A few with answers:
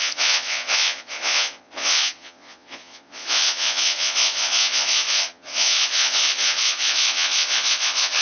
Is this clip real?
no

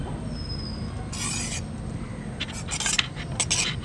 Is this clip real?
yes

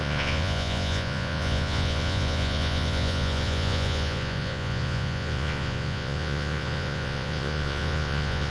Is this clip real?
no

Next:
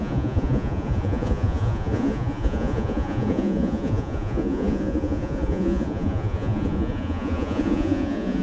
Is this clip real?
no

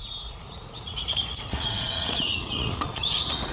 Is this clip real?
no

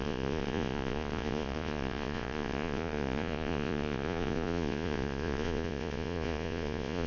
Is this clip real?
no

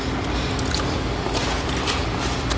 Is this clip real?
yes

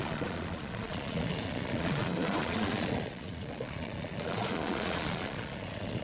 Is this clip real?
no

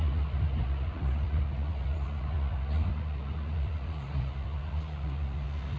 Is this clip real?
no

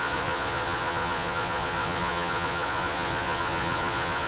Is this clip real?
no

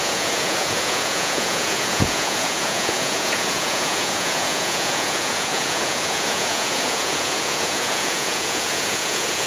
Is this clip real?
no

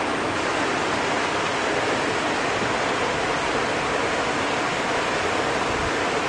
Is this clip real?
yes